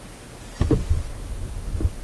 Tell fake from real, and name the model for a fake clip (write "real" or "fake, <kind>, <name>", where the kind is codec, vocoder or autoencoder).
real